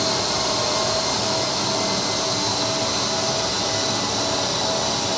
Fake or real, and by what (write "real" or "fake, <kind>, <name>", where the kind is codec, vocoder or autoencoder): real